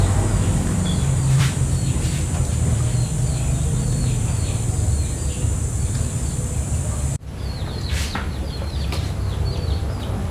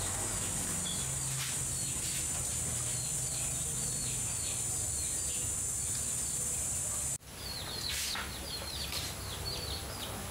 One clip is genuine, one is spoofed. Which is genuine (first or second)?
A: second